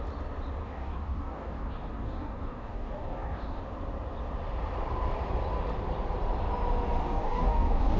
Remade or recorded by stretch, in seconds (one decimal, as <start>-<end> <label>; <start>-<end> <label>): 0.0-0.6 recorded; 0.6-3.6 remade; 3.6-7.0 recorded; 7.0-8.0 remade